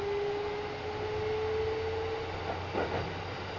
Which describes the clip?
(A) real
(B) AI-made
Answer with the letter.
A